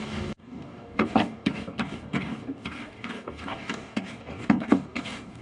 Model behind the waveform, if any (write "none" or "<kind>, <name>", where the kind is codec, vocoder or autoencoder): codec, DAC